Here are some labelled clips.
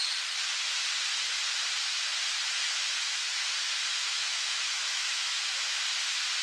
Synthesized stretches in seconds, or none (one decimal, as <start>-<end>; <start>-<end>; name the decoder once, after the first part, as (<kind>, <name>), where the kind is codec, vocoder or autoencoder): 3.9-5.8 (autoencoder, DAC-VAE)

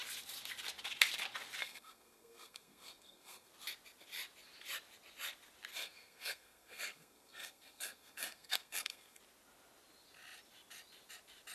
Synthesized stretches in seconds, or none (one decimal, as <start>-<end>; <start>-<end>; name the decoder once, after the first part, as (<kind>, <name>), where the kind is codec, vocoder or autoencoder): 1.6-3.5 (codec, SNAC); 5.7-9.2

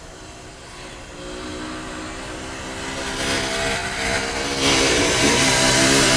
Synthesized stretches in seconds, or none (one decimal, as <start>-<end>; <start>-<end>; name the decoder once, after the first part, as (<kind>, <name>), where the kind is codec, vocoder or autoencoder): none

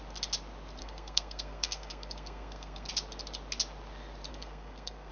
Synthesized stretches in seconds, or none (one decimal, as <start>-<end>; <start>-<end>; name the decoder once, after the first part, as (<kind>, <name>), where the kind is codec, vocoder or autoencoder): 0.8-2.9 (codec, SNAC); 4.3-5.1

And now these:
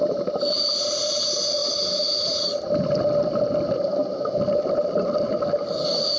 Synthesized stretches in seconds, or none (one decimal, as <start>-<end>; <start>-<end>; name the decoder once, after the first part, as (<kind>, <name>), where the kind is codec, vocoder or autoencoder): none

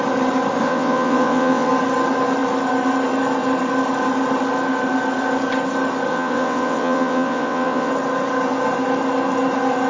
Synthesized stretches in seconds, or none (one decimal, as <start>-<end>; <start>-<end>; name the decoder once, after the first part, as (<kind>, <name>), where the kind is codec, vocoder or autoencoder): 0.6-1.7 (vocoder, WaveNeXt); 6.1-7.9

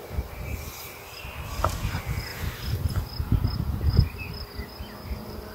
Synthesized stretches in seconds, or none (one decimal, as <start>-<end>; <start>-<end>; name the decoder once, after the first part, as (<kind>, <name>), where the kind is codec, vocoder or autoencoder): none